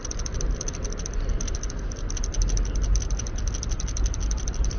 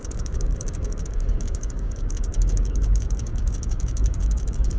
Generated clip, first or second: second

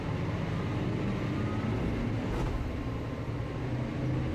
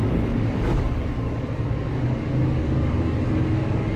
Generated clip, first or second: second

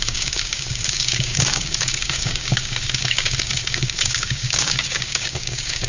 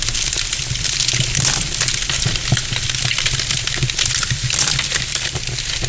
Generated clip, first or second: first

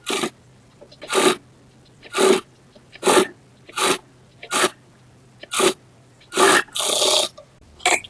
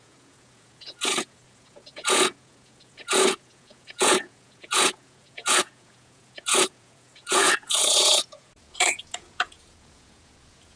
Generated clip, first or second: second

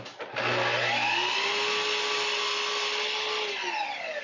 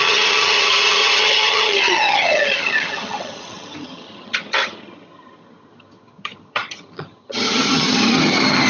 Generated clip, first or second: second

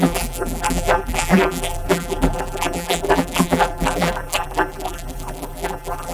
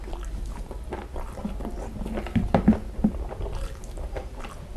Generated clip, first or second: first